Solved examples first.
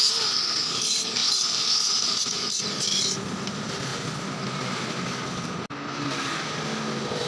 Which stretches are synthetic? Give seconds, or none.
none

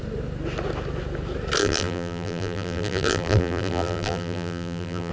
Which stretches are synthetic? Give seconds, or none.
1.6-5.1 (vocoder, BigVGAN v2)

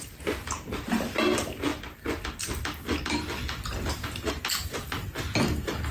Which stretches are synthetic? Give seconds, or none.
none

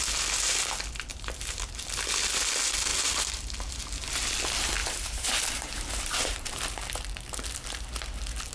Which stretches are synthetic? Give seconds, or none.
1.1-1.7 (vocoder, BigVGAN v2); 4.8-6.8

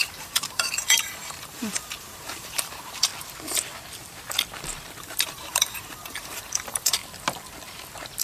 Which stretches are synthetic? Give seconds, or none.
0.0-3.1 (vocoder, BigVGAN v2); 5.0-7.0

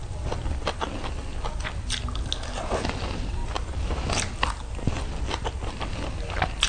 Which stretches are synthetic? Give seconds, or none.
none

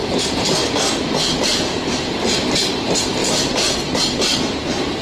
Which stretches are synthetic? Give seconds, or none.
3.2-4.0 (vocoder, BigVGAN v2)